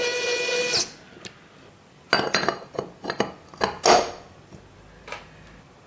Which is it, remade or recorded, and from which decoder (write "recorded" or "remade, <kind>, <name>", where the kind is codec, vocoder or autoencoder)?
recorded